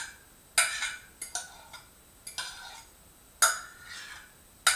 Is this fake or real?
real